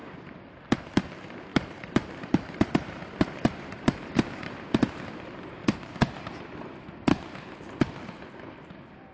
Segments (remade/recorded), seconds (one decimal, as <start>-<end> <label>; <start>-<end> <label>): 0.0-1.5 recorded; 1.5-5.0 remade; 5.0-5.6 recorded; 5.6-6.2 remade; 6.2-9.1 recorded

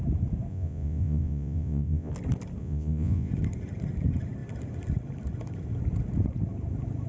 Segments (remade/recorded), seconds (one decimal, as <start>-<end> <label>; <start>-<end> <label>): 0.0-0.5 recorded; 0.5-2.1 remade; 2.1-2.6 recorded; 2.6-3.3 remade; 3.3-7.1 recorded

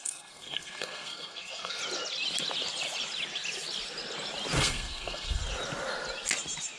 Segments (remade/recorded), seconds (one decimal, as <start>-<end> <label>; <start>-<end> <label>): 0.0-1.8 remade; 1.8-4.6 recorded; 4.6-5.4 remade; 5.4-6.8 recorded

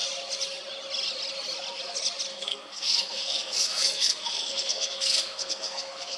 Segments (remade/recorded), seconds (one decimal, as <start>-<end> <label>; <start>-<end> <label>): 0.0-2.3 recorded; 2.3-6.2 remade

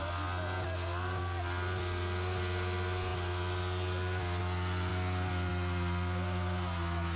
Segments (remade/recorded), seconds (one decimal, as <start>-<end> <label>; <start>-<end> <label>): 0.0-7.2 recorded

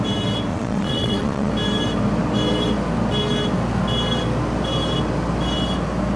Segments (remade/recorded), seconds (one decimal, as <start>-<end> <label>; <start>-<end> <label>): 0.0-0.5 recorded; 0.5-1.5 remade; 1.5-6.2 recorded

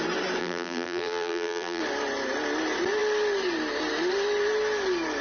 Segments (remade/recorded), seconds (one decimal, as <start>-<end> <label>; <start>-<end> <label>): 0.0-0.4 recorded; 0.4-1.8 remade; 1.8-5.2 recorded